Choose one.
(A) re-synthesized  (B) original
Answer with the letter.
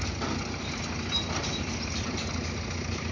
B